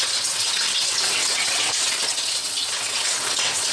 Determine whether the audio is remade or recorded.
remade